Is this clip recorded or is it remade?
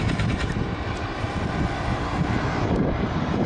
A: remade